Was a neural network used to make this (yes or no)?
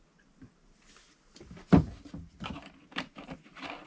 no